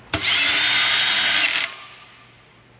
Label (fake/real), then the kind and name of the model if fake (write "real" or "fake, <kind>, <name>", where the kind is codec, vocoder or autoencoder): real